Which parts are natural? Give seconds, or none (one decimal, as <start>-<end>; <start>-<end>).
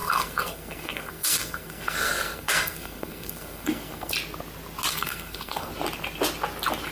4.1-4.9; 5.7-6.9